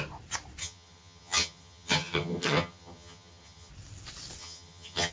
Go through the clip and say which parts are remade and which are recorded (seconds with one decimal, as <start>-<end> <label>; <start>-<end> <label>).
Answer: 0.0-0.6 recorded; 0.6-3.7 remade; 3.7-4.4 recorded; 4.4-5.1 remade